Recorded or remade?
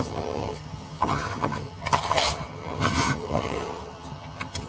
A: remade